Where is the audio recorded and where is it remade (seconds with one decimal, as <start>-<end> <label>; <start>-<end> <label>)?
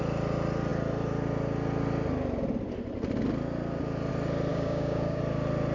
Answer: 0.0-4.5 recorded; 4.5-5.2 remade; 5.2-5.7 recorded